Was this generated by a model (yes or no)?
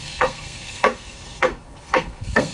yes